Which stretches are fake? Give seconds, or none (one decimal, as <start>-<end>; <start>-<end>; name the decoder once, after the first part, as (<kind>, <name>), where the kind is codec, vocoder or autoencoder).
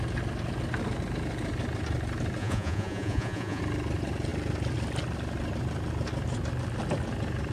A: 2.4-3.6 (vocoder, Vocos)